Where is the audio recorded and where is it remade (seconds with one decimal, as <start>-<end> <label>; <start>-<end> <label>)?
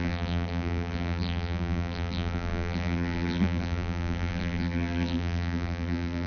0.0-6.3 remade